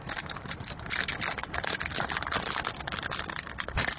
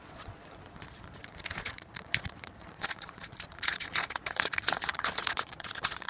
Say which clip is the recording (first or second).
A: first